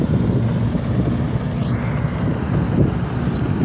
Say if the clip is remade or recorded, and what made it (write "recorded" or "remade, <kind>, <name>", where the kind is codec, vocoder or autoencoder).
recorded